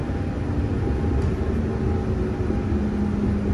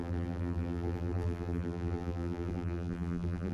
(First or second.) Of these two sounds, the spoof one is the second